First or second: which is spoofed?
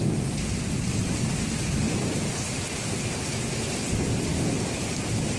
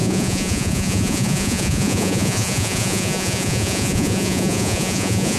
second